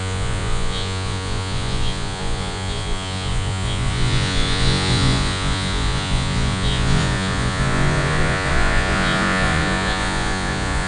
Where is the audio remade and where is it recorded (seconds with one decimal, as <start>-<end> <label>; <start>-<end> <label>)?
0.0-10.9 remade